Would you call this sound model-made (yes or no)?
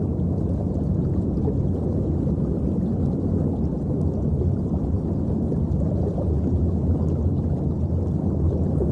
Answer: no